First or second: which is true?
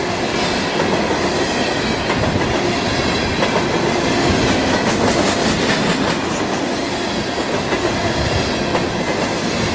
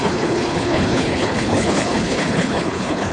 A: first